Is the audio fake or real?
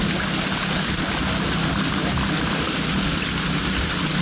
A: real